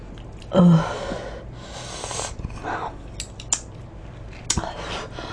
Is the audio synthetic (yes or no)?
no